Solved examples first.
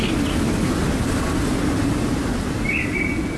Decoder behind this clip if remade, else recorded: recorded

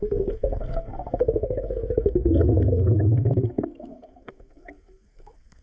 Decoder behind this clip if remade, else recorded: remade, codec, SNAC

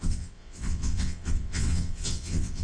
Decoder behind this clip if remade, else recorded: remade, vocoder, WaveNeXt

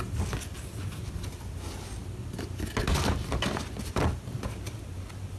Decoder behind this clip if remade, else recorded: recorded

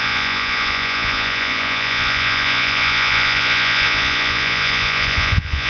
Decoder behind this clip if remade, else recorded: remade, vocoder, Vocos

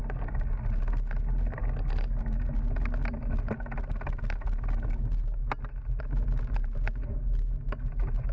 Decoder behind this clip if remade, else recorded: recorded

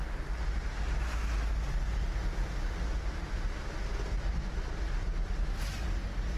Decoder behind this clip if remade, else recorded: recorded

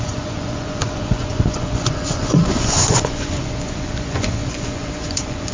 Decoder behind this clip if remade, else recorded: remade, vocoder, Vocos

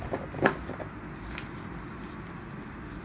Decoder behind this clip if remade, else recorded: recorded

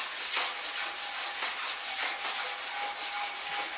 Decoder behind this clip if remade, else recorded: recorded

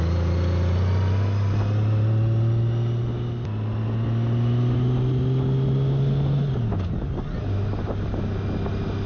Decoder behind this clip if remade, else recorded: recorded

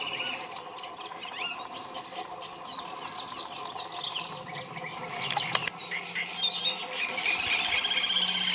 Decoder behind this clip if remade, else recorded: recorded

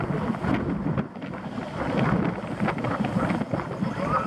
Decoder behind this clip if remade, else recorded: recorded